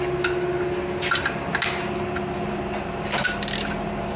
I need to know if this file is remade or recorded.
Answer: recorded